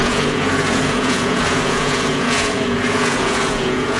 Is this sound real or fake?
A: fake